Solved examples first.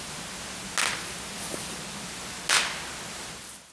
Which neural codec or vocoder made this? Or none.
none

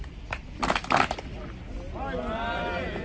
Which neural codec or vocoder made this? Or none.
none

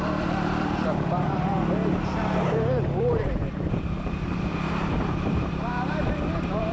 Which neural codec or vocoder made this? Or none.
vocoder, BigVGAN v2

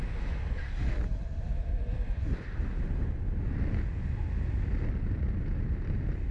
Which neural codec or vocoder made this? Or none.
none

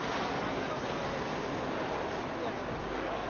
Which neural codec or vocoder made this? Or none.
none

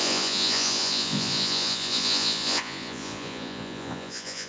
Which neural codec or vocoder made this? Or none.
vocoder, Vocos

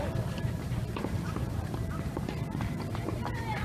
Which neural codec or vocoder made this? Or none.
vocoder, BigVGAN v2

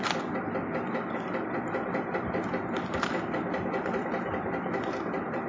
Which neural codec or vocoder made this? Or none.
none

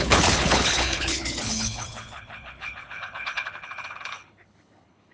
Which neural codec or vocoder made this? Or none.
codec, HILCodec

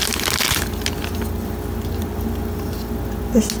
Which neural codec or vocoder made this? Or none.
none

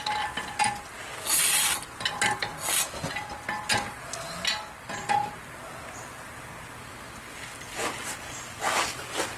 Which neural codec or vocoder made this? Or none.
none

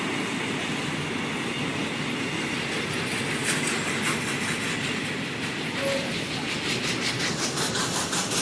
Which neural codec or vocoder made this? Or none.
none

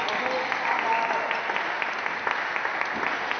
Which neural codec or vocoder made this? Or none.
none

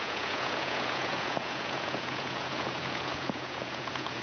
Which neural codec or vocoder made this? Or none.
vocoder, Vocos